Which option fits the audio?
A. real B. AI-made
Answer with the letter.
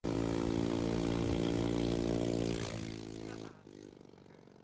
A